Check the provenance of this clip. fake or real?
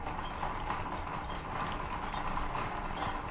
real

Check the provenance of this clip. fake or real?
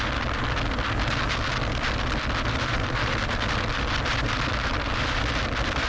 real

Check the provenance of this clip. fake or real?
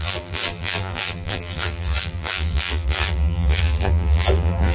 fake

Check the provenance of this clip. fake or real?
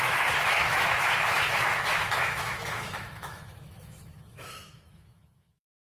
fake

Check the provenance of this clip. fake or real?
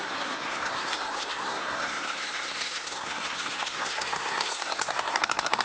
fake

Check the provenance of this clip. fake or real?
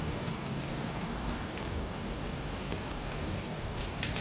fake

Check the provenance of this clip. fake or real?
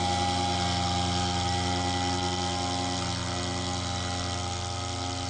real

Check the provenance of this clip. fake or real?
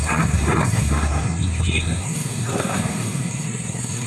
fake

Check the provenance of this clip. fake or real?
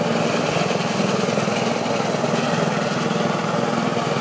real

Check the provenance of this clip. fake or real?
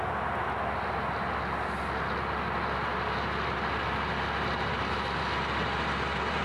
real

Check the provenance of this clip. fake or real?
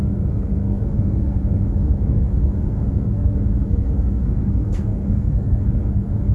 fake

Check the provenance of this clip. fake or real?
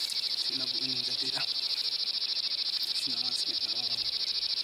real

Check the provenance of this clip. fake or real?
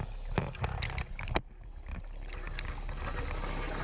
real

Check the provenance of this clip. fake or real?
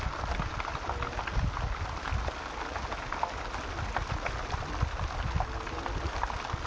real